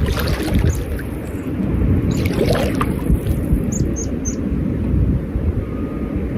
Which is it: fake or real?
real